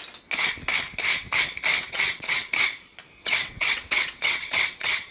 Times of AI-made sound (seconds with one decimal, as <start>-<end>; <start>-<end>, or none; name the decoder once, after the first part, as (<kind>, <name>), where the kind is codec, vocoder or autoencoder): 1.7-2.5 (vocoder, WaveNeXt); 3.2-5.1